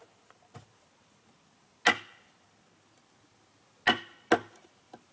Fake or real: real